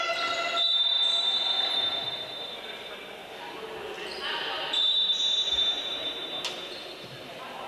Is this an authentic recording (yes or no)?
yes